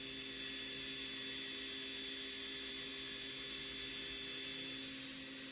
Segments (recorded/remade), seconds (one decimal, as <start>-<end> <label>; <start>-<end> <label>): 0.0-5.5 recorded